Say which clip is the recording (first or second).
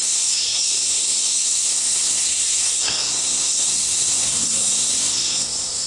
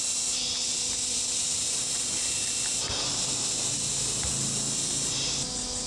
second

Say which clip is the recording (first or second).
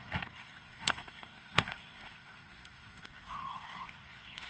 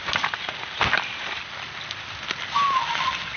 second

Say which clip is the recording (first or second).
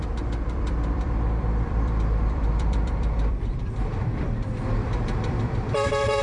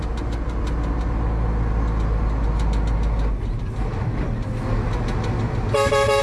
second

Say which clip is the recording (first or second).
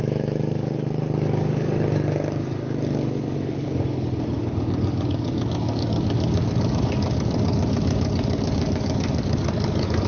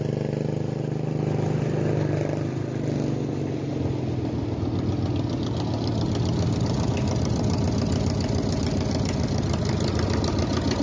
second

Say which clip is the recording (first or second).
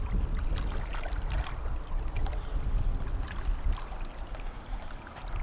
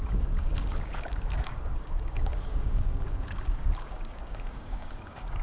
first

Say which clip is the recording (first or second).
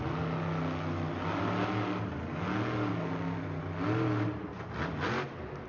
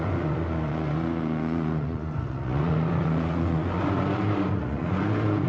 first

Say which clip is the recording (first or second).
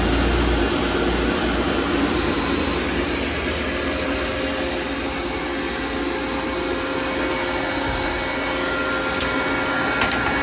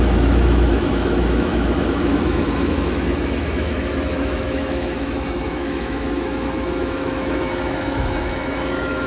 first